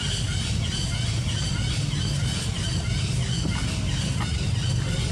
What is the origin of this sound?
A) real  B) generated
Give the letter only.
A